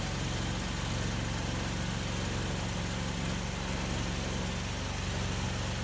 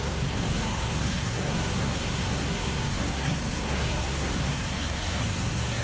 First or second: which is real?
first